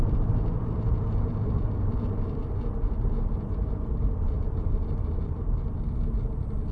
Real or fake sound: fake